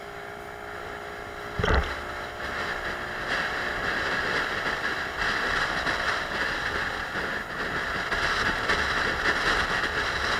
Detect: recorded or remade recorded